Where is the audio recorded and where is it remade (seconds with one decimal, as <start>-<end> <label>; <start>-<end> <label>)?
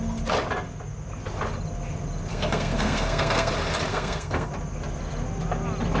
0.0-2.3 recorded; 2.3-3.5 remade; 3.5-3.9 recorded; 3.9-4.5 remade; 4.5-6.0 recorded